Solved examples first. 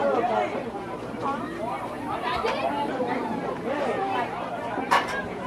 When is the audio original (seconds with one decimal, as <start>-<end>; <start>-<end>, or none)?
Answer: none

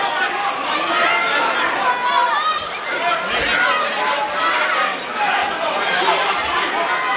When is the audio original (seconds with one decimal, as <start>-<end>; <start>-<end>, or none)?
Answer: 0.0-2.2; 3.0-7.2

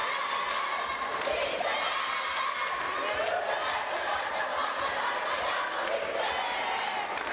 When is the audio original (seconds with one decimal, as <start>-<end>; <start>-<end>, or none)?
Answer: 0.0-7.3

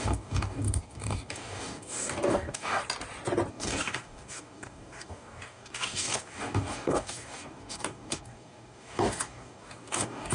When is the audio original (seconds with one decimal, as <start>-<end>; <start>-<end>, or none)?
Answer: 2.8-3.5

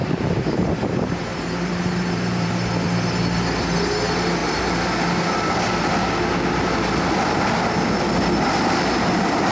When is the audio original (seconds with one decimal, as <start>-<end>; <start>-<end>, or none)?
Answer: 2.5-9.5

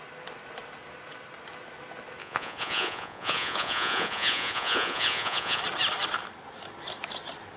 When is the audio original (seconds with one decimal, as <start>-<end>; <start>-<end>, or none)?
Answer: 0.0-2.2; 5.6-7.6

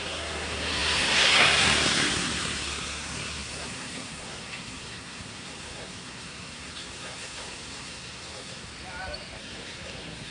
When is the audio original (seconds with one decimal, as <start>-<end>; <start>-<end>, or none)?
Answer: 8.7-9.4

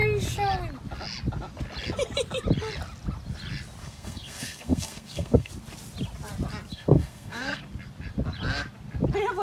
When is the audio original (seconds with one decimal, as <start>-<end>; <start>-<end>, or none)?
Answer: 0.0-3.8; 5.5-6.7; 7.6-9.4